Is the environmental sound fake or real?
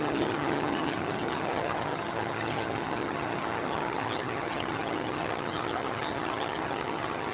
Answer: fake